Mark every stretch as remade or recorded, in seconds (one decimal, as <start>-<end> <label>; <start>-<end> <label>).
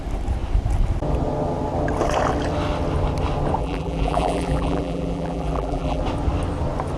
0.0-3.6 recorded; 3.6-6.0 remade; 6.0-7.0 recorded